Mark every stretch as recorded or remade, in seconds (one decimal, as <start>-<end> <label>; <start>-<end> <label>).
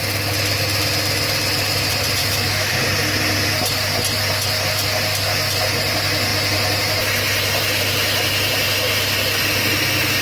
0.0-2.2 recorded; 2.2-2.7 remade; 2.7-10.2 recorded